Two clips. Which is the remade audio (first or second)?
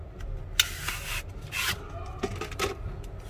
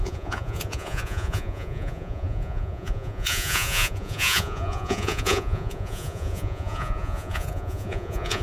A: second